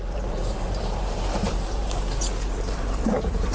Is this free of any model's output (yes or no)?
no